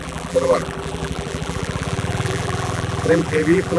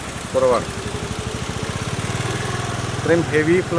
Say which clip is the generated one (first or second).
first